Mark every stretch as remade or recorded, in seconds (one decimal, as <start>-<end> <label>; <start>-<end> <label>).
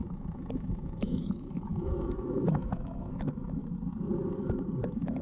0.0-3.6 remade; 3.6-4.8 recorded; 4.8-5.2 remade